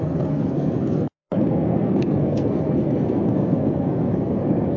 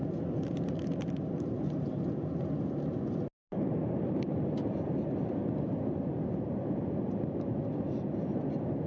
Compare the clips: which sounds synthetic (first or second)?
first